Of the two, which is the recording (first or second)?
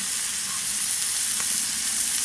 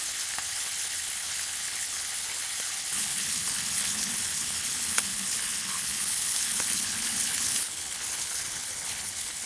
first